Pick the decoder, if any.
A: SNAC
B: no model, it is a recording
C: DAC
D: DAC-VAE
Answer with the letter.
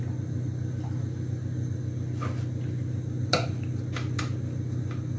B